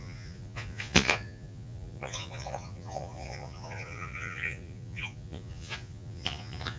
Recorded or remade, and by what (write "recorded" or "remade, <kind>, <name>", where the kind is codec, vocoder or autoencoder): remade, vocoder, Vocos